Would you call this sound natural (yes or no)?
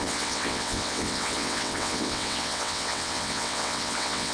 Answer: no